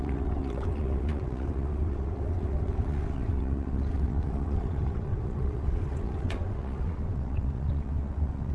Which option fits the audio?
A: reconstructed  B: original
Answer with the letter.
A